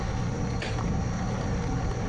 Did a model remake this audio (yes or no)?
no